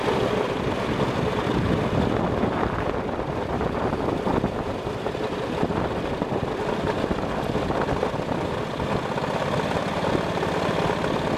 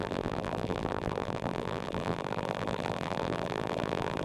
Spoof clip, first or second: second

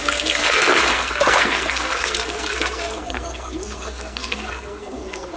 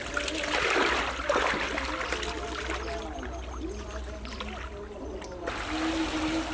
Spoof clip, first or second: first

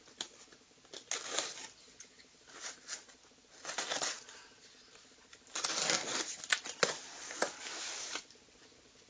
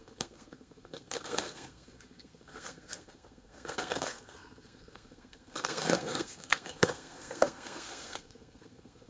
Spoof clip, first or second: second